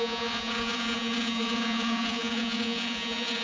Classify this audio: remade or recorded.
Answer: remade